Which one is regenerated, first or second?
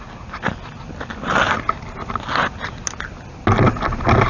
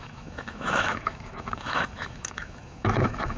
second